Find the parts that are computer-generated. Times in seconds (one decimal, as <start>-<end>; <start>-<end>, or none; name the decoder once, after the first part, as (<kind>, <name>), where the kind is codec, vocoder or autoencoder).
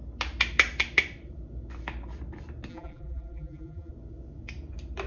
2.7-3.9 (vocoder, BigVGAN v2)